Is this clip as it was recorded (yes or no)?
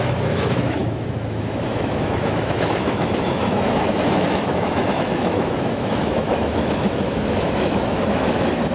no